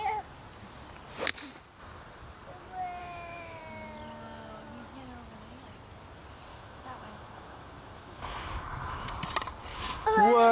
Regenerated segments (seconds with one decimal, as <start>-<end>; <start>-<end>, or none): 3.0-3.6; 6.5-9.1; 9.7-10.5